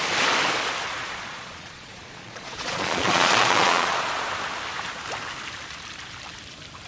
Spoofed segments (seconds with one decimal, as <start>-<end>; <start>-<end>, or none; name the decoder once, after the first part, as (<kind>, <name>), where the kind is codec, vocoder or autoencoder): 1.0-4.3 (vocoder, Vocos)